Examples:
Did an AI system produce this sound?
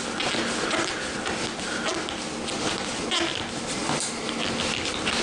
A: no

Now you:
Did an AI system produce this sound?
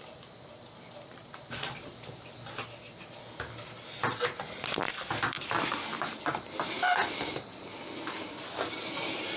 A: no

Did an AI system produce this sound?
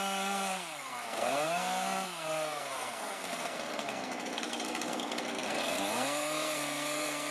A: yes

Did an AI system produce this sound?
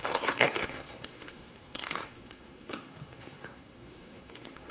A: yes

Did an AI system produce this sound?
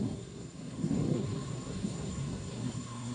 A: yes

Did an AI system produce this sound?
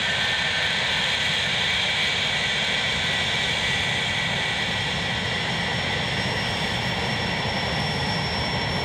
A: no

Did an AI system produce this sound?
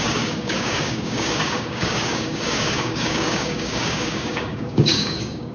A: yes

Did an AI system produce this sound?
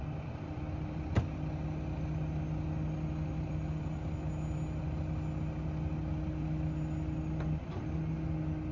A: no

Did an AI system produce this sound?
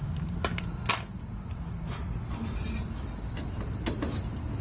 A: no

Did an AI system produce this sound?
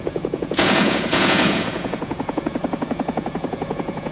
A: yes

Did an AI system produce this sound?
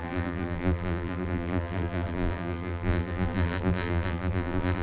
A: yes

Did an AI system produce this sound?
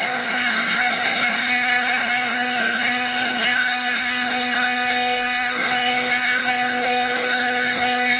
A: yes